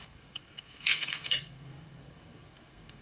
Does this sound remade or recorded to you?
remade